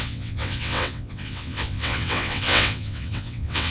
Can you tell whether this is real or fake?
fake